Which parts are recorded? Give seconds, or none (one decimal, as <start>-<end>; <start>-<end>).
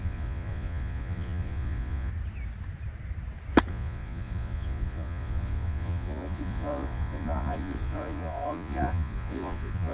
2.1-3.7